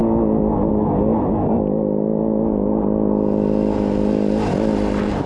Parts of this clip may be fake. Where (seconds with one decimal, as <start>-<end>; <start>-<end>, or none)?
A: none